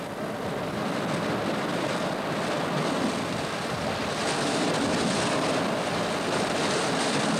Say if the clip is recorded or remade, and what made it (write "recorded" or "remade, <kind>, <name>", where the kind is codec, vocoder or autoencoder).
recorded